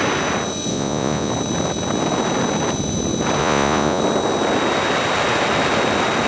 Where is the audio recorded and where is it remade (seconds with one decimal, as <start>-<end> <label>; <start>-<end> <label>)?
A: 0.0-0.7 recorded; 0.7-1.3 remade; 1.3-3.4 recorded; 3.4-4.0 remade; 4.0-6.3 recorded